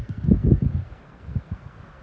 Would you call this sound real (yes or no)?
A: no